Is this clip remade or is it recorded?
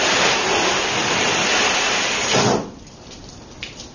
remade